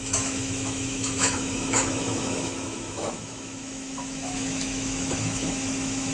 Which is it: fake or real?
fake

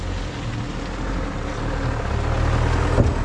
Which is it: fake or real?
real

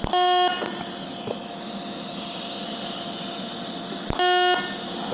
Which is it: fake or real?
real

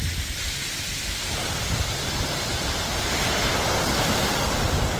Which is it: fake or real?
real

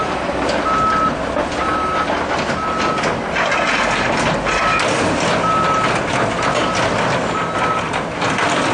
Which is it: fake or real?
real